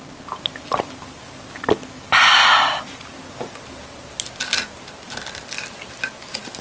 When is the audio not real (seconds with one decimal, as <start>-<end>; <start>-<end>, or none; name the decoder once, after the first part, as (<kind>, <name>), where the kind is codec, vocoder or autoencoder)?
none